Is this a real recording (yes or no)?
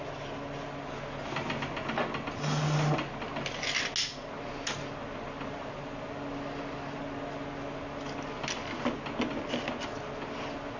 yes